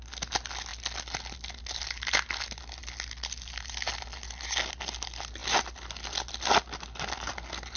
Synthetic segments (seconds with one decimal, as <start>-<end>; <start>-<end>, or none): none

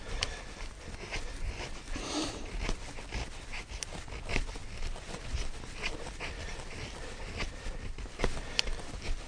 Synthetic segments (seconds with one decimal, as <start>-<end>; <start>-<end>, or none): none

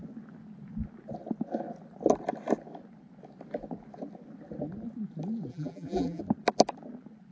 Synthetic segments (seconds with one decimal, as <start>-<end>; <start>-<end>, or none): 5.5-6.2

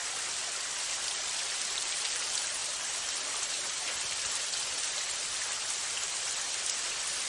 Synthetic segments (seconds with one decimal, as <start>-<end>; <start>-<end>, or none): 0.0-1.8; 2.6-6.7

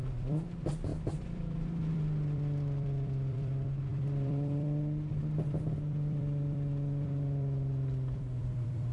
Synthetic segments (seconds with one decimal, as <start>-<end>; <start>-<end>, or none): 0.0-8.9

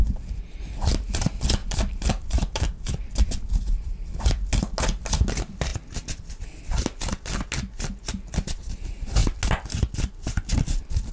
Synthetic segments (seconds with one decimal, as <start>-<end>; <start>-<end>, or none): 0.0-0.6; 1.6-4.1

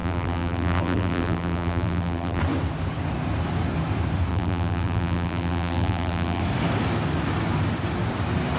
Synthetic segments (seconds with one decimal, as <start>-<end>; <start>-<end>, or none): 0.0-2.4; 4.3-6.4

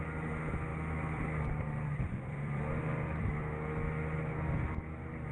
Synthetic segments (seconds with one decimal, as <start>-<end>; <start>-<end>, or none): 0.7-3.3